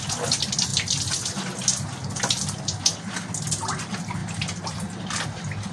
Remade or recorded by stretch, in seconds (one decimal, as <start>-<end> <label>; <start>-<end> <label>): 0.0-0.7 recorded; 0.7-2.8 remade; 2.8-4.2 recorded; 4.2-5.3 remade; 5.3-5.7 recorded